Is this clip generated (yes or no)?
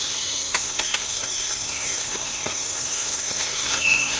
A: yes